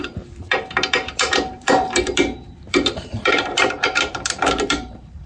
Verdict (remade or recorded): remade